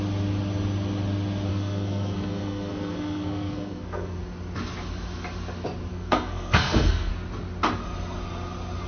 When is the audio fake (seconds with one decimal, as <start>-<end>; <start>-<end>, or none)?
1.5-4.2; 5.9-7.1